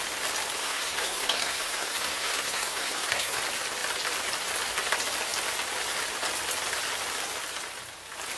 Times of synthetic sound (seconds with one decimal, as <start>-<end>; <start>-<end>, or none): 0.6-3.4